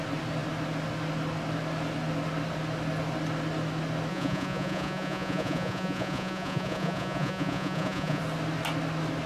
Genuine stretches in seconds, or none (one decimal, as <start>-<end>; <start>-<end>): 0.0-4.1; 8.2-9.3

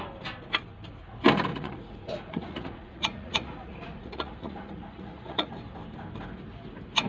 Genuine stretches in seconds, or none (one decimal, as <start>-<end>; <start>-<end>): 0.0-1.5; 5.5-7.1